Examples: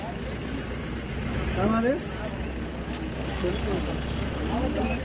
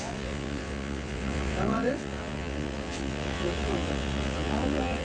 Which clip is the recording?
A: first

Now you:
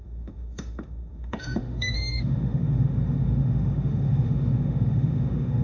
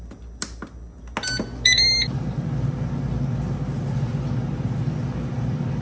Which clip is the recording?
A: second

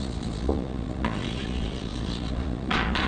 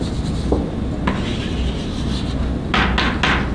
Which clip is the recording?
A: second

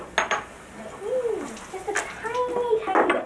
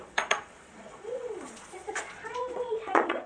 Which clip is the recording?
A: first